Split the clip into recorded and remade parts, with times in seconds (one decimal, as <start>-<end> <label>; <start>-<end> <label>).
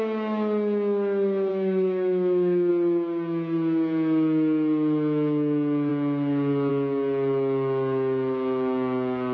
0.0-1.5 recorded; 1.5-2.7 remade; 2.7-9.3 recorded